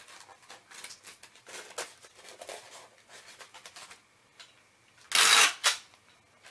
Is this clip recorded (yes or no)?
yes